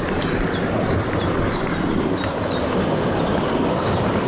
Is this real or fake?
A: real